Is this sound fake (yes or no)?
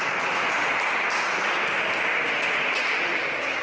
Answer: no